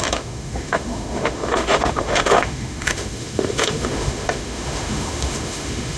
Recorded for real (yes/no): no